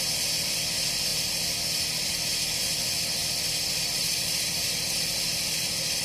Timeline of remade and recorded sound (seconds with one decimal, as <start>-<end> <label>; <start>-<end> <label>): 0.0-6.0 remade